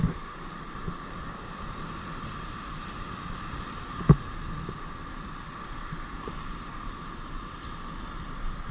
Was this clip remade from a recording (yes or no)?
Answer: no